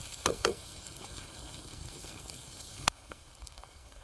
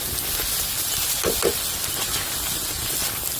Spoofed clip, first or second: first